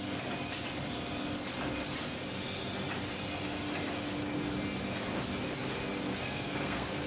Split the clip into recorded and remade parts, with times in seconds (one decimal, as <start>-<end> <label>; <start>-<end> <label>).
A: 0.0-6.2 recorded; 6.2-7.1 remade